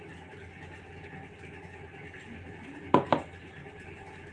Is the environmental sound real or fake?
real